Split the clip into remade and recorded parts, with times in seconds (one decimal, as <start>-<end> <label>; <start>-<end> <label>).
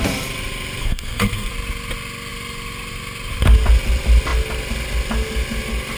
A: 0.0-0.8 recorded; 0.8-1.5 remade; 1.5-6.0 recorded